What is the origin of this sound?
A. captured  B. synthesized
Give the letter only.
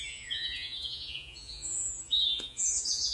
B